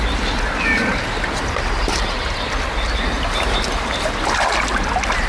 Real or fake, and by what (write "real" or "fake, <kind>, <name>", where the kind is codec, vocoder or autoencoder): real